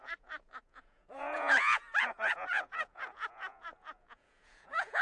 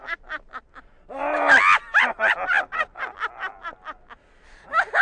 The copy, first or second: first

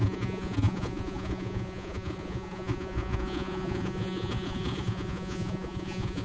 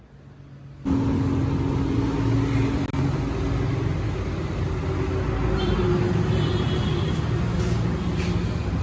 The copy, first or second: first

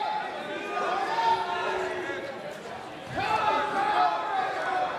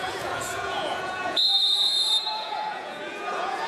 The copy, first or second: second